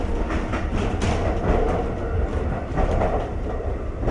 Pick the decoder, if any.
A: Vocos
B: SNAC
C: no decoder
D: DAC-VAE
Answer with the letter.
C